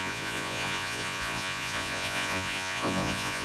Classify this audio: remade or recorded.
remade